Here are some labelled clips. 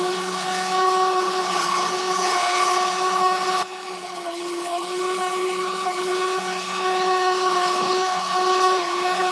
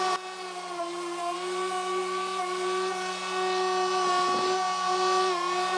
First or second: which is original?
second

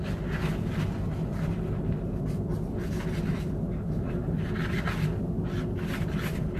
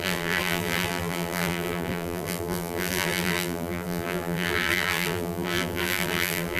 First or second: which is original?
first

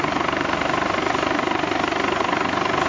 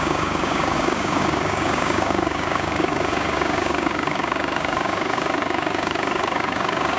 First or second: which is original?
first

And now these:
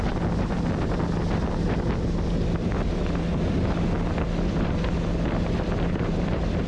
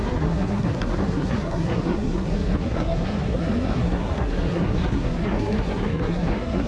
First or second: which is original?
first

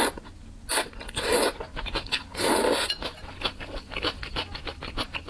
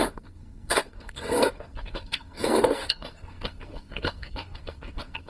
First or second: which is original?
first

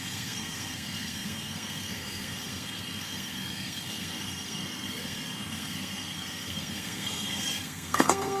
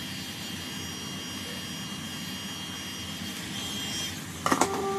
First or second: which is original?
second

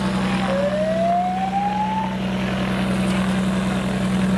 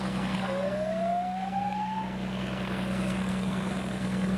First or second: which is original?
first